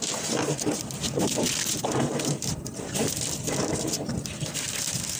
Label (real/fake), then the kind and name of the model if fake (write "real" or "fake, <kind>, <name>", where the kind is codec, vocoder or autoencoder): real